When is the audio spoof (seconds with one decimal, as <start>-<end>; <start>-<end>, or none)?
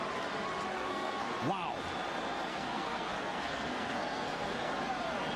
0.7-1.3; 2.5-4.7